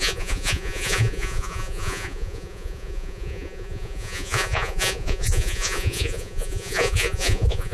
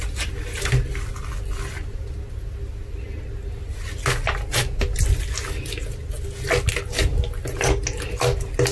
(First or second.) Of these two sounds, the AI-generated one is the first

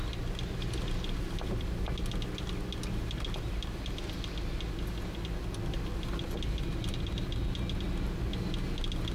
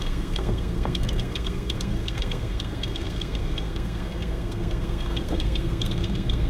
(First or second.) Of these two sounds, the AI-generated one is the second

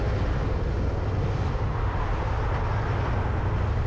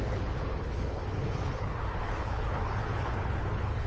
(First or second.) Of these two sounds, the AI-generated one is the second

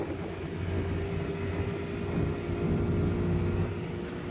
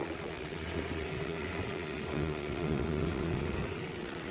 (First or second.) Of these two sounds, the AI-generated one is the second